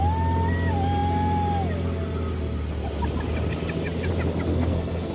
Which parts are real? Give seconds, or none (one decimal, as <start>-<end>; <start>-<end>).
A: 0.0-4.5